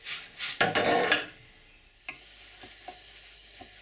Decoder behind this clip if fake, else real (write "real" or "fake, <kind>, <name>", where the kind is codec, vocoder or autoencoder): real